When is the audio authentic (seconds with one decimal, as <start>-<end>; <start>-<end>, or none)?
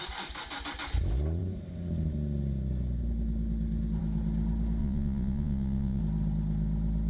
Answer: 0.0-4.8; 6.0-7.1